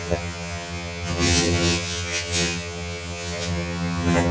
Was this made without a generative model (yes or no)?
no